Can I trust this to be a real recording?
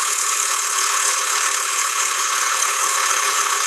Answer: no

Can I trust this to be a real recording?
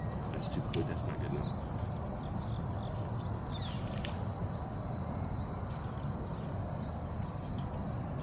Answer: yes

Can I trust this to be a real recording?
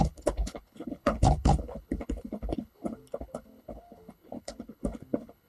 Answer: no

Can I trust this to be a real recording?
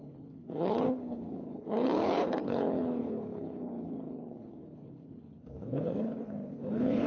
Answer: no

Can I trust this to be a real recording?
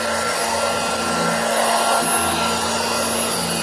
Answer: yes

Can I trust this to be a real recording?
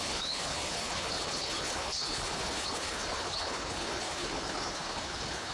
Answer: no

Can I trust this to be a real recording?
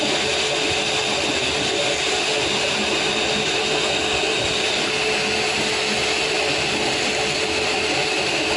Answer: yes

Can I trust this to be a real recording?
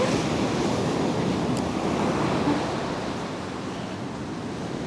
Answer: yes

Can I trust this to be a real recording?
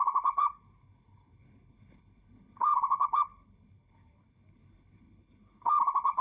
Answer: no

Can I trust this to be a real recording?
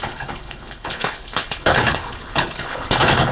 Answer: no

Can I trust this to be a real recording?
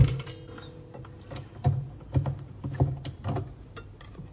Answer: yes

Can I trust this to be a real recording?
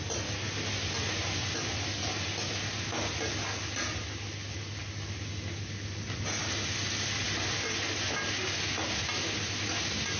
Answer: yes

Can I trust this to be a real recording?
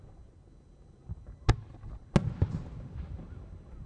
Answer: yes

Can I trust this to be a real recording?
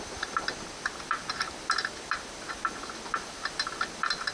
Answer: yes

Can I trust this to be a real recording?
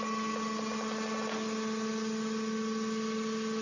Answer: yes